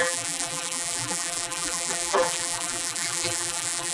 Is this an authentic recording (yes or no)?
no